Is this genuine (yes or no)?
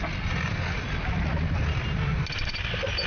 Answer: yes